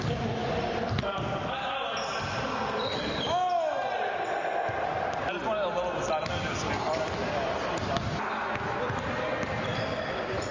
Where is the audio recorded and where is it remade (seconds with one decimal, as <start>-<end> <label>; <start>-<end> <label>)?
0.0-10.5 recorded